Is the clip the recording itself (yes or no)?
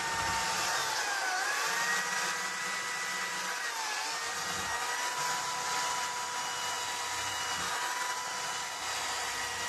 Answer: yes